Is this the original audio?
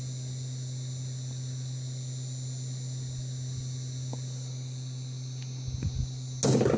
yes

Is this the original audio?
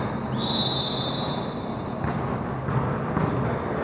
yes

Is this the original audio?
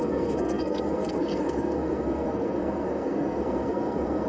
no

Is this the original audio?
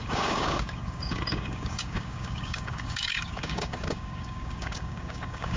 no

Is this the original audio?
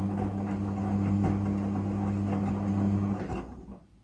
yes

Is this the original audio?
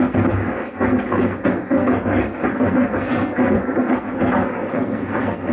no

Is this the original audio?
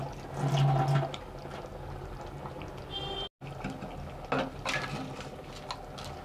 yes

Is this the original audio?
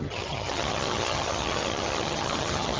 no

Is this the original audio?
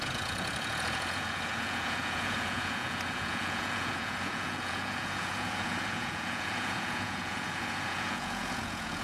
no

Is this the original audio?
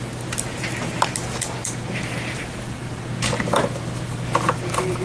yes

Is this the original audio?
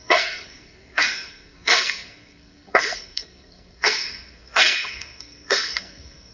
no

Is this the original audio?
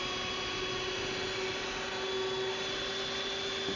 yes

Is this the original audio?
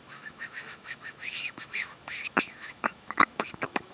no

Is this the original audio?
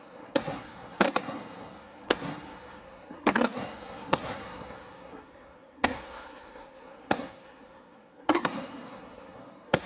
no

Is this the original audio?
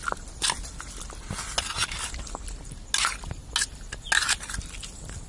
yes